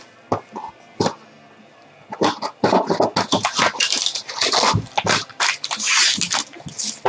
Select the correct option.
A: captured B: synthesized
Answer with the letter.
A